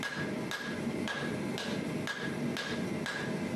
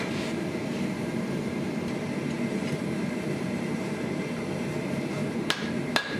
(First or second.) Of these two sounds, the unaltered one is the first